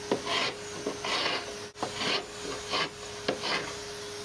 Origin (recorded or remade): recorded